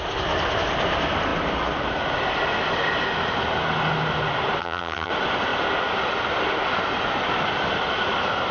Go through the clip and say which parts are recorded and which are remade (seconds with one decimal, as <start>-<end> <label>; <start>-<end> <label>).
0.0-4.6 recorded; 4.6-5.1 remade; 5.1-8.5 recorded